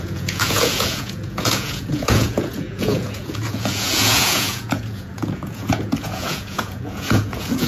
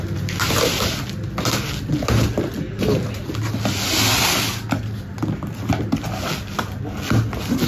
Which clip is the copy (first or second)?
first